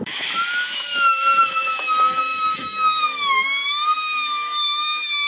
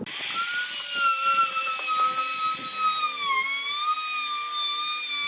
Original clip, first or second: second